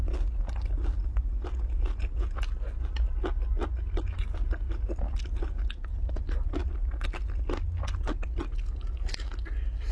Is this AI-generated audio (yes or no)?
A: no